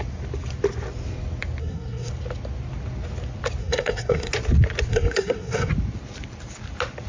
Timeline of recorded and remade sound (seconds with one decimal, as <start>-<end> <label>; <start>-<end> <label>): 0.0-1.6 recorded; 1.6-2.1 remade; 2.1-3.6 recorded; 3.6-4.3 remade; 4.3-4.9 recorded; 4.9-5.7 remade; 5.7-7.1 recorded